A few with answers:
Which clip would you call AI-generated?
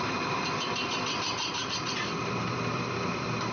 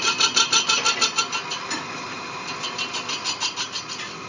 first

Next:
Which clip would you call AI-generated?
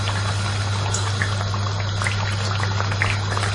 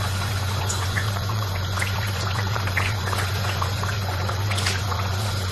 second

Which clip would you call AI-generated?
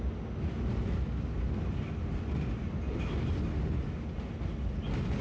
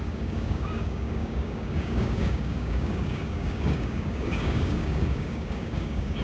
second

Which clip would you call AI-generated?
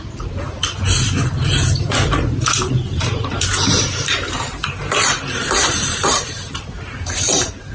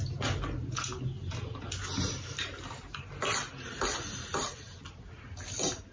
first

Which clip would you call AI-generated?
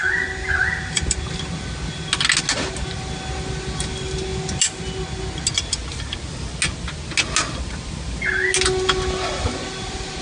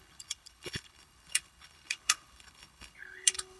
second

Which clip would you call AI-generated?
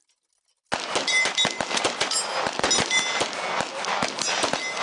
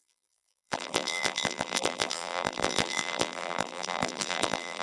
second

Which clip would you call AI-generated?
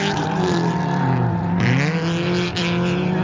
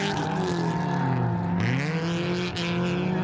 first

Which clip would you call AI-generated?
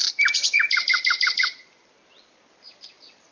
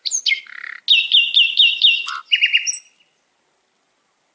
first